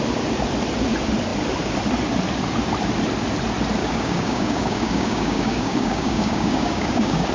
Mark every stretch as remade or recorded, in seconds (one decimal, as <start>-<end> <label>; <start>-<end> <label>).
0.0-3.8 recorded; 3.8-7.3 remade